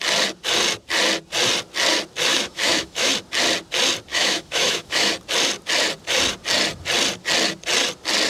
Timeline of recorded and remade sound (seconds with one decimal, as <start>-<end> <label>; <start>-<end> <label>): 0.0-2.3 recorded; 2.3-3.1 remade; 3.1-4.1 recorded; 4.1-5.1 remade; 5.1-8.3 recorded